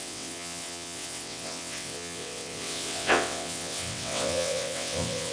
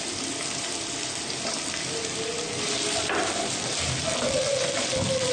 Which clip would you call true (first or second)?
second